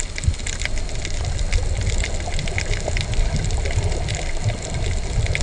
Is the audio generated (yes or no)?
no